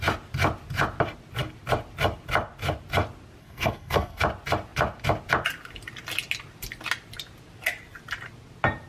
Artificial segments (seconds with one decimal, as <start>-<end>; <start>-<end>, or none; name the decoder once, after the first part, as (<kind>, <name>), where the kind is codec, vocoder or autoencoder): 3.4-4.2 (codec, SNAC)